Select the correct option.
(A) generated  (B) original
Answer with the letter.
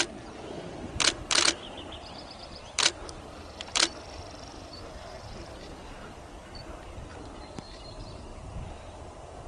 A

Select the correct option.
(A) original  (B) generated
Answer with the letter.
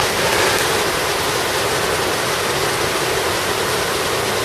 A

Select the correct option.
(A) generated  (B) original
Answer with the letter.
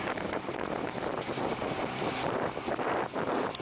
A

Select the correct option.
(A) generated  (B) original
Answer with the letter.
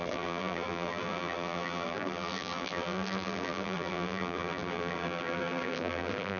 A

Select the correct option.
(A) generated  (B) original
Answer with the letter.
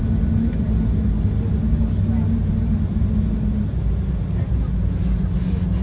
B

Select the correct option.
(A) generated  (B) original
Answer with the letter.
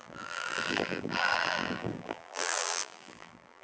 A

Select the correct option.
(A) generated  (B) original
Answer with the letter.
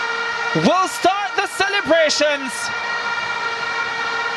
B